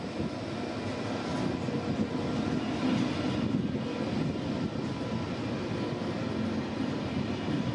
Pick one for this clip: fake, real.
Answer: real